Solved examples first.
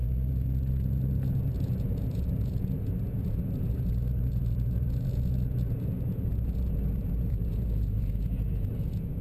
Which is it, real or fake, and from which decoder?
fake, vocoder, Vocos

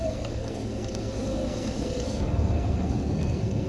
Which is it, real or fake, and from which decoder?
fake, codec, SNAC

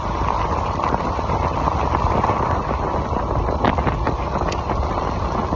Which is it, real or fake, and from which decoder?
real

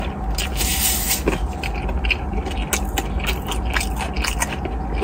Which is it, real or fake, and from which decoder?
real